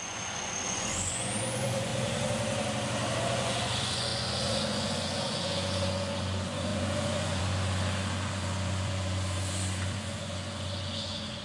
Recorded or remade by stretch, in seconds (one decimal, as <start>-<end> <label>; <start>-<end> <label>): 0.0-1.9 remade; 1.9-3.2 recorded; 3.2-11.4 remade